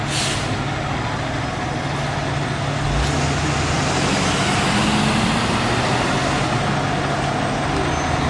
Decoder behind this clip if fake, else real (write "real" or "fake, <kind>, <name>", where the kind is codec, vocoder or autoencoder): real